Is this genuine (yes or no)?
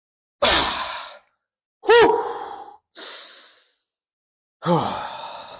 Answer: yes